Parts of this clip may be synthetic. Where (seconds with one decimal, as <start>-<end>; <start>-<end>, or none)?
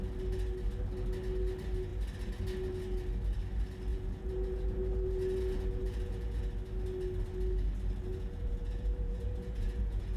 3.9-6.4; 8.1-10.2